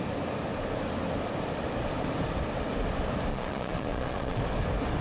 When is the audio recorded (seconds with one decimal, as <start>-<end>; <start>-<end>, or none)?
0.0-3.3; 4.4-5.0